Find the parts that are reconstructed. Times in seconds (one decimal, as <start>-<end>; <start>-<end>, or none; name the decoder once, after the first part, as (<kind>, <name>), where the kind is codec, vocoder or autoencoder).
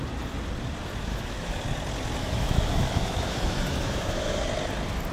1.1-1.6 (autoencoder, DAC-VAE); 2.2-4.4